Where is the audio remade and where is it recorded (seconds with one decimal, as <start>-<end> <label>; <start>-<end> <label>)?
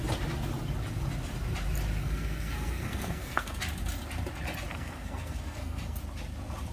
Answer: 0.0-2.0 recorded; 2.0-3.6 remade; 3.6-4.7 recorded; 4.7-6.0 remade; 6.0-6.7 recorded